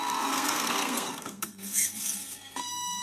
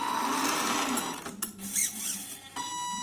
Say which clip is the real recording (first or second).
second